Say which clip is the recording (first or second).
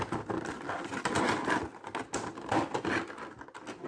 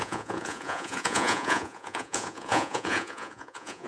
first